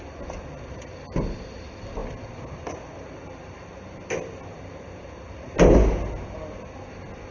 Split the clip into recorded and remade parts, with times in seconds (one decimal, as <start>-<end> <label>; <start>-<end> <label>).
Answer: 0.0-7.3 recorded

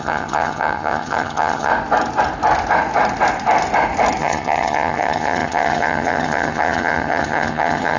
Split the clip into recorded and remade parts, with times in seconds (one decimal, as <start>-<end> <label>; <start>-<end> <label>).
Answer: 0.0-1.7 remade; 1.7-4.2 recorded; 4.2-8.0 remade